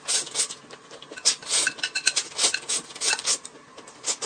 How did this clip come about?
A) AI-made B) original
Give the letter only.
B